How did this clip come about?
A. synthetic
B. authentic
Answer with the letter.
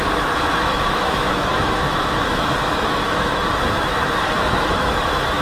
A